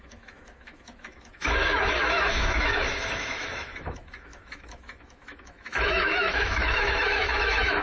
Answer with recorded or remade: remade